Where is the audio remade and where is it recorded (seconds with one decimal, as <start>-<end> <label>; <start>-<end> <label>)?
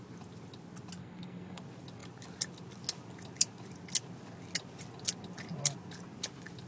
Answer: 0.0-1.0 recorded; 1.0-1.6 remade; 1.6-6.7 recorded